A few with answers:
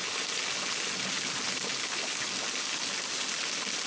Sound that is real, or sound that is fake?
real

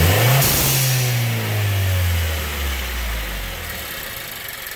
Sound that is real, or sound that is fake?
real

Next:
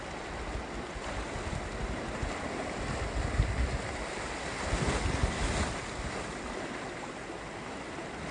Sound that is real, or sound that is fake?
real